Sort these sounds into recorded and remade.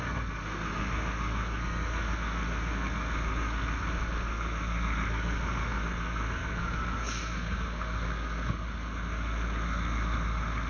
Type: remade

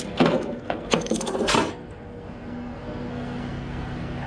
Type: remade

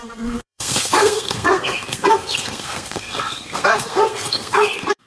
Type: remade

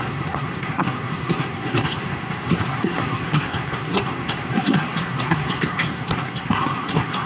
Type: remade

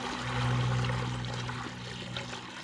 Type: recorded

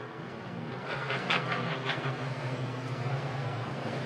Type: remade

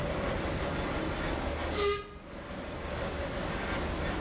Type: recorded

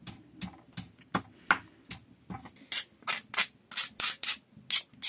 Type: recorded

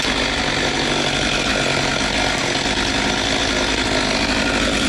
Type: recorded